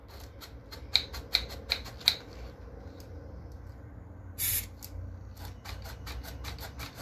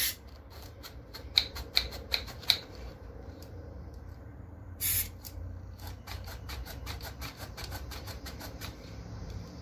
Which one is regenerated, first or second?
second